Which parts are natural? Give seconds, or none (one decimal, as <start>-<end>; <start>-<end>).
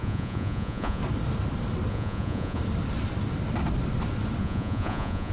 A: 1.0-1.9; 2.6-4.4